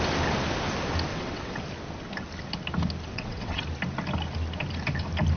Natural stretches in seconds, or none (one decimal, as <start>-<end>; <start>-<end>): 0.0-1.1; 1.6-3.1; 3.6-5.4